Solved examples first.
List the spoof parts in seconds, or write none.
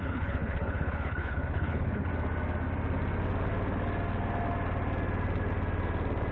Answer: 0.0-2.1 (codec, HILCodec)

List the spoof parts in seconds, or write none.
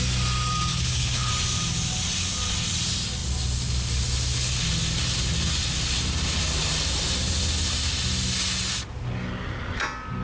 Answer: 0.7-1.3 (codec, HILCodec)